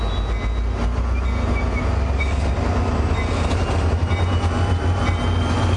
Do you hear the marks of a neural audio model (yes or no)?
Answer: no